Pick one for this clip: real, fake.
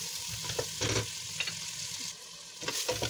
real